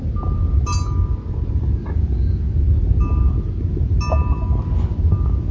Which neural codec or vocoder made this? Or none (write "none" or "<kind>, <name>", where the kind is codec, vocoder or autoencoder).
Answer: none